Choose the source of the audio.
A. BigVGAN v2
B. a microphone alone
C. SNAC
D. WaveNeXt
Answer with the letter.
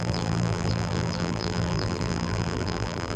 A